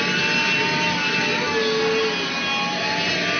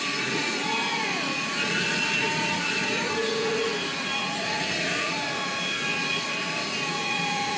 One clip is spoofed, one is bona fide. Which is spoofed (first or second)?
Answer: second